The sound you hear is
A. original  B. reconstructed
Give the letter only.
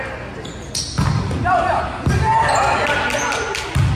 A